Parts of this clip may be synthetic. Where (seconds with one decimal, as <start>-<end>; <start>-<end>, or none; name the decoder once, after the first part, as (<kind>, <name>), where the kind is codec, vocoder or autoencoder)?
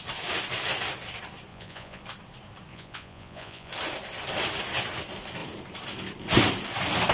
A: 1.5-2.0 (vocoder, Vocos); 2.7-3.7